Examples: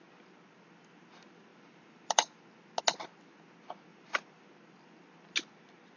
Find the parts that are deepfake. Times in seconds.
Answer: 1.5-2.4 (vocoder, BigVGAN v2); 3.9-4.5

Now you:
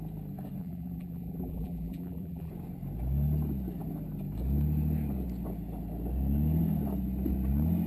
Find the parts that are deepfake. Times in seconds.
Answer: 0.6-2.5 (vocoder, BigVGAN v2)

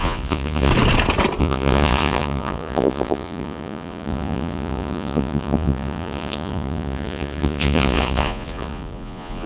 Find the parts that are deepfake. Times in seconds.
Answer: 0.0-0.7 (vocoder, Vocos); 1.4-9.5

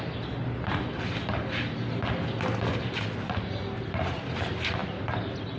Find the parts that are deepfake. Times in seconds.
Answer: none